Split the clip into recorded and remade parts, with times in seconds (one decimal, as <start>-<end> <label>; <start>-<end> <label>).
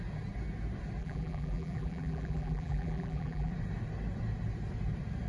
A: 0.0-1.0 recorded; 1.0-3.5 remade; 3.5-5.3 recorded